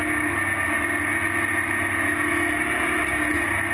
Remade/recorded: recorded